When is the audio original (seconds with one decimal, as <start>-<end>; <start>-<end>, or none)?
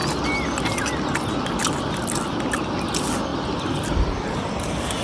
0.0-5.0